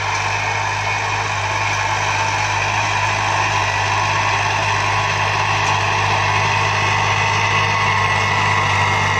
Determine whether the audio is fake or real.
real